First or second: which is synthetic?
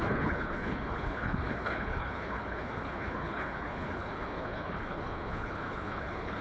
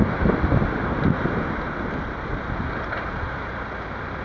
first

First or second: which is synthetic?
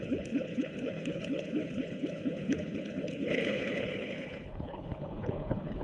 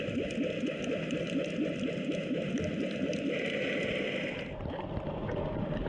first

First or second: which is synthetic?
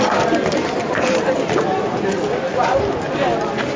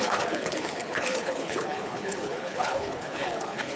second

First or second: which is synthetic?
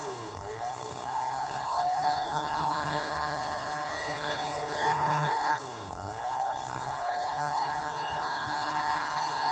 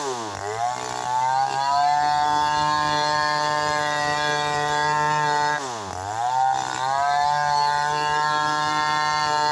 first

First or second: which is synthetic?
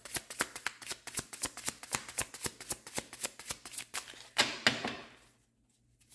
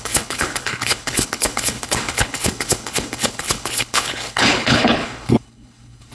second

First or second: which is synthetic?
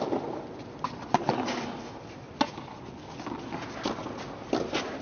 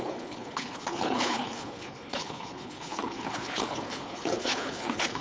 second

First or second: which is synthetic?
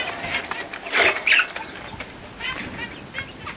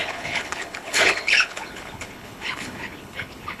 second